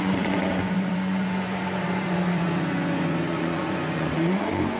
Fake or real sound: fake